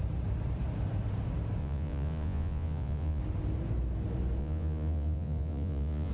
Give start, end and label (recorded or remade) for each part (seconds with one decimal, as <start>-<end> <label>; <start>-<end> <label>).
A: 0.0-1.6 recorded; 1.6-3.2 remade; 3.2-4.4 recorded; 4.4-6.1 remade